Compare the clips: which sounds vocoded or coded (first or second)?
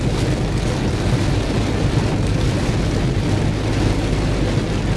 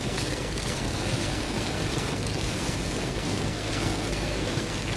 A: second